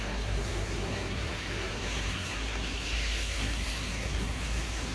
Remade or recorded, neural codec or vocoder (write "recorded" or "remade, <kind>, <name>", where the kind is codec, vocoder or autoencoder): remade, codec, SNAC